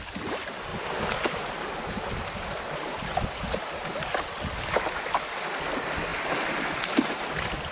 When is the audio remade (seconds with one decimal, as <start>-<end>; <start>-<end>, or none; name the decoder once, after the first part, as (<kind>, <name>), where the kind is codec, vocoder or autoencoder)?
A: 0.7-2.3 (vocoder, BigVGAN v2)